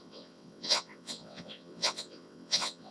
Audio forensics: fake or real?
fake